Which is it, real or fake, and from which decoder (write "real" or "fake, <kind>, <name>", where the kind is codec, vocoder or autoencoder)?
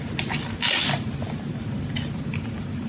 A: real